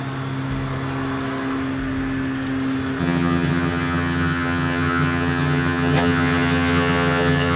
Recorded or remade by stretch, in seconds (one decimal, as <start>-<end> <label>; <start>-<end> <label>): 0.0-3.0 recorded; 3.0-7.6 remade